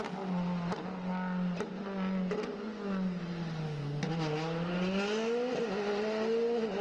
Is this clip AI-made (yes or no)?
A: no